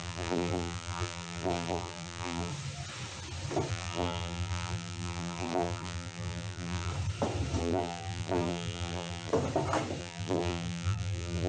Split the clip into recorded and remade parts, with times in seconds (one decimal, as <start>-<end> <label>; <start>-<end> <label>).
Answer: 0.0-2.5 remade; 2.5-3.7 recorded; 3.7-6.9 remade; 6.9-7.6 recorded; 7.6-9.3 remade; 9.3-10.0 recorded; 10.0-11.5 remade